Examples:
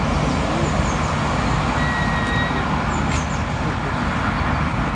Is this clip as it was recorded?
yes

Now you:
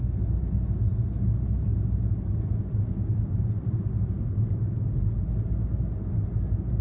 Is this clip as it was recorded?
yes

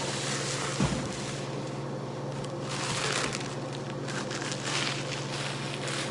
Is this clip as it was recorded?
yes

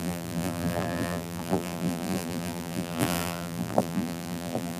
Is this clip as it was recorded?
no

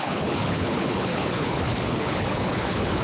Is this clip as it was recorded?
no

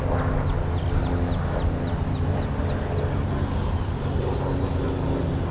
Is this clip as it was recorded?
yes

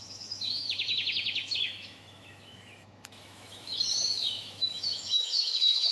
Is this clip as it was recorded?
no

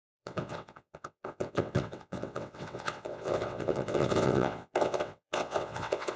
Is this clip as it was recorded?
no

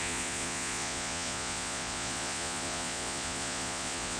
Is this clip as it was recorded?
no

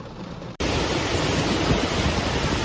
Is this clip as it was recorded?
yes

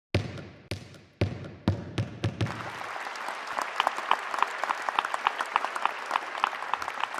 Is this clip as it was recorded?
yes